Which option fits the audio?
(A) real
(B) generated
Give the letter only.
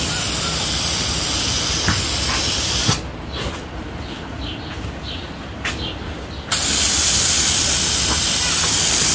A